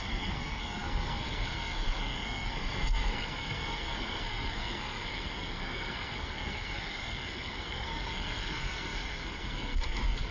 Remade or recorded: remade